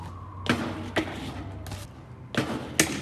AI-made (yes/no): no